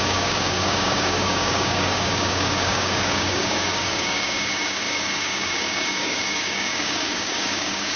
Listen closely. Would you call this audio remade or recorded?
remade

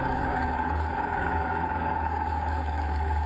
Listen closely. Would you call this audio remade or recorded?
remade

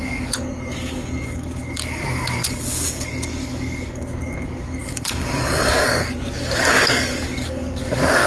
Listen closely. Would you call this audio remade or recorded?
remade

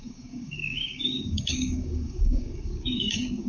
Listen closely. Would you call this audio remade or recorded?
remade